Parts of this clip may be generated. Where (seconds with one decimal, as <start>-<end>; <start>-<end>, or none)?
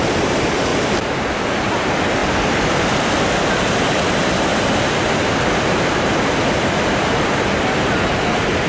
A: 2.2-3.0; 4.5-5.8